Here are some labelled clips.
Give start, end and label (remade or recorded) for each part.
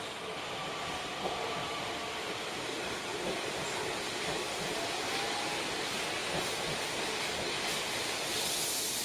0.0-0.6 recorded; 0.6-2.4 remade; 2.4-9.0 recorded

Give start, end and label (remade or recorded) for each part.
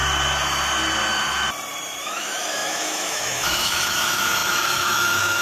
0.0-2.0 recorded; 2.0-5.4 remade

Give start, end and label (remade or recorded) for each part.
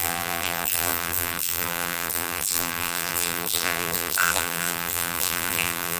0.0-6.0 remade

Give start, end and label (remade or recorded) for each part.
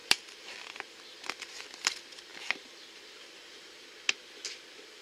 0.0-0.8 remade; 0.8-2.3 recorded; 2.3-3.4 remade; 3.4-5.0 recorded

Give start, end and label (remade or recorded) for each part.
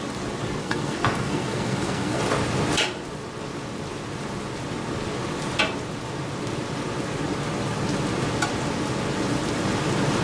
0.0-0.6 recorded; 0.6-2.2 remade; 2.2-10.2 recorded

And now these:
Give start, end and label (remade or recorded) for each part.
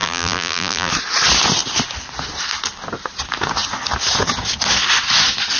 0.0-0.9 remade; 0.9-5.6 recorded